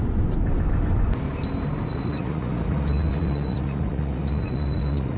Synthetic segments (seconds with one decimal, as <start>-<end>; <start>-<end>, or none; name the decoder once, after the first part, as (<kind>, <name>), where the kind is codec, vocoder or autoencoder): 1.9-5.2 (vocoder, Vocos)